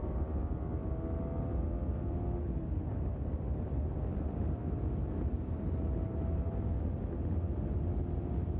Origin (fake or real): real